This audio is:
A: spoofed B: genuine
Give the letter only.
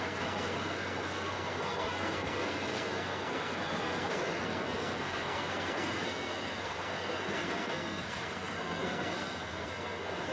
A